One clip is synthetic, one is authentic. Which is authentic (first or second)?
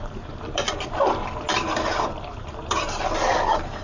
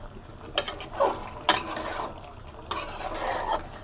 second